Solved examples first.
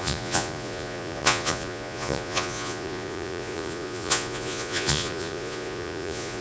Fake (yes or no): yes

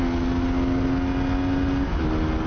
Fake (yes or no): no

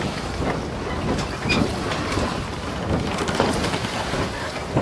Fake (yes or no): no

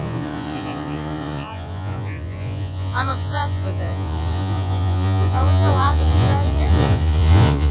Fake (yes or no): yes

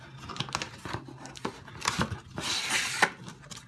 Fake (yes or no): no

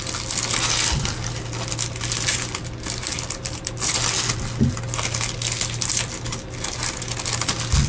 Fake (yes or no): no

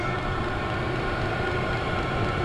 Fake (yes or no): no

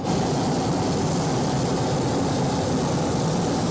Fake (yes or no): no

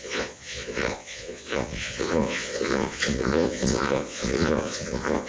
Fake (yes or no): yes